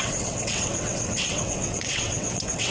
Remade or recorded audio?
remade